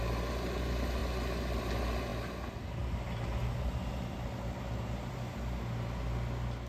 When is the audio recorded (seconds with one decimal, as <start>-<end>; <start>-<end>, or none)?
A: 0.0-6.7